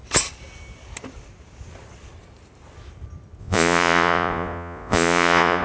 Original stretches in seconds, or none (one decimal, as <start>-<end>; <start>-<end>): 0.0-3.4